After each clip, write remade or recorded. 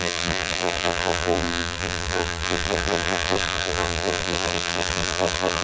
remade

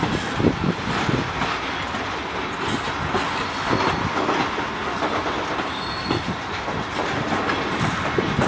recorded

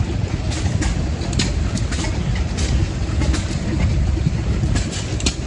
recorded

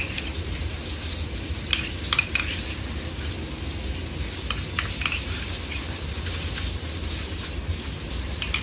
recorded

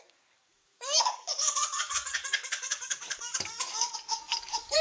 remade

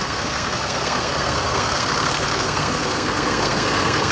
remade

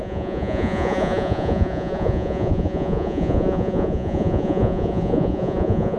remade